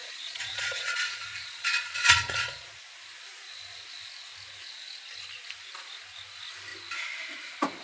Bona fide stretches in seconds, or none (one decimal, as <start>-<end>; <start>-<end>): 2.8-7.8